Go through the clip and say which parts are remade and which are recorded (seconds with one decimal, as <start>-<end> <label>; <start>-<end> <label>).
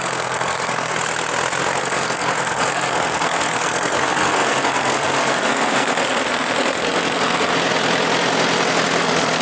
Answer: 0.0-0.9 remade; 0.9-1.8 recorded; 1.8-7.5 remade; 7.5-9.0 recorded; 9.0-9.4 remade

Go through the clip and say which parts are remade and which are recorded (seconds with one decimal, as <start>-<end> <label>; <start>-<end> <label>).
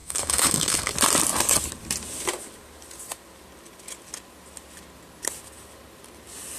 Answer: 0.0-0.9 remade; 0.9-6.6 recorded